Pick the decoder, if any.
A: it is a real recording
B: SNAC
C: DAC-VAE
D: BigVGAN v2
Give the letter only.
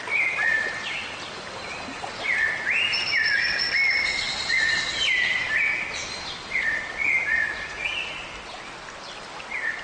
A